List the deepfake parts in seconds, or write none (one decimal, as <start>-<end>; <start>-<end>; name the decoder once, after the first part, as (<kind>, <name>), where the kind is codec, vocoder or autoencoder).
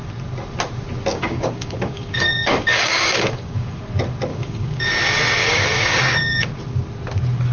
1.1-3.8 (codec, DAC); 4.3-4.9; 5.4-6.5